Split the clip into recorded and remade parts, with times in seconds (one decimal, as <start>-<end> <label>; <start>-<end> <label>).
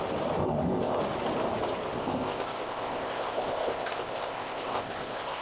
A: 0.0-0.4 recorded; 0.4-1.0 remade; 1.0-2.0 recorded; 2.0-5.4 remade